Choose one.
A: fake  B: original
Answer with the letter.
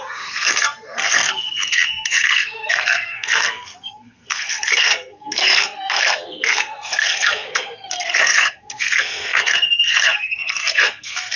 A